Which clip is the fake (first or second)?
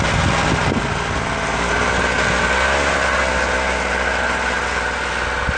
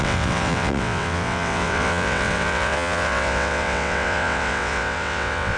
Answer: second